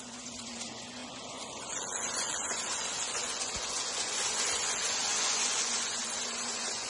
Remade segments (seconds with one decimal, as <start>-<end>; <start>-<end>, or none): 0.0-6.9